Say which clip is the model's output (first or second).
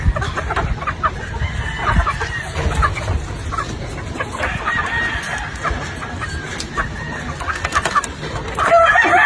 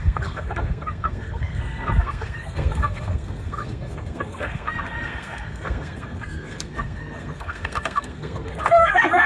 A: second